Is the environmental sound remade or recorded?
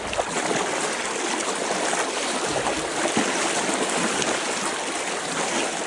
recorded